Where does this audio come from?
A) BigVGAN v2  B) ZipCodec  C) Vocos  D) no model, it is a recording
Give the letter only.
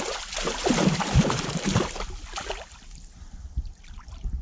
D